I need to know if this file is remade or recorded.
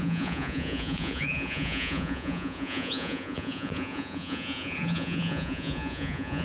remade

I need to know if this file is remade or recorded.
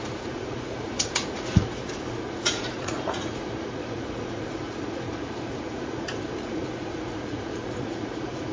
remade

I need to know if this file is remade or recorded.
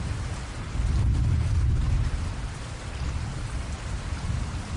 recorded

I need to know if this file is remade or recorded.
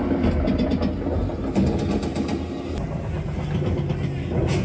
recorded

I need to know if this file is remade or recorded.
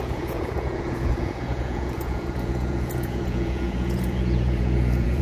remade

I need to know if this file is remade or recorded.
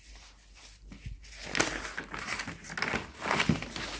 recorded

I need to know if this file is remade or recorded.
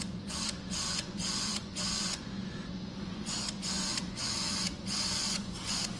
remade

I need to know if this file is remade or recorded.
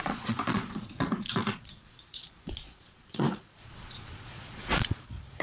remade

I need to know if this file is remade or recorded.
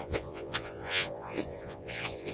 remade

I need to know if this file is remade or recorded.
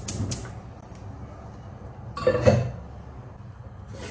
recorded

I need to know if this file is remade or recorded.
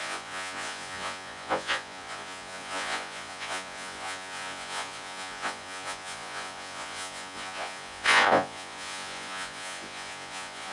remade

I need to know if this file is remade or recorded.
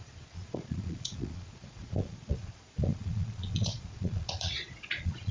remade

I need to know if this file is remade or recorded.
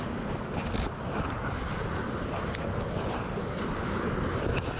recorded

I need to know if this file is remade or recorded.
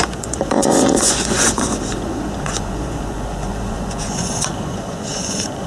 remade